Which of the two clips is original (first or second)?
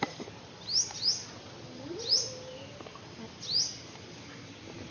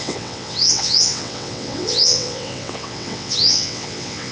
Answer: first